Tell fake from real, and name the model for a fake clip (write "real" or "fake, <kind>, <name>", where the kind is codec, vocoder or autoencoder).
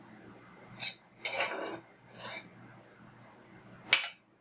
real